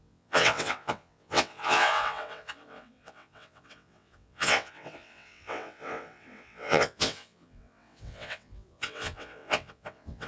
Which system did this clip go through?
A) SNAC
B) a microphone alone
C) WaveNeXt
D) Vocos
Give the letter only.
C